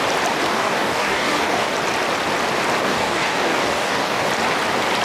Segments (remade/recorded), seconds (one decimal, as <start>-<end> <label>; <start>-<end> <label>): 0.0-0.5 recorded; 0.5-1.7 remade; 1.7-2.8 recorded; 2.8-4.3 remade; 4.3-5.0 recorded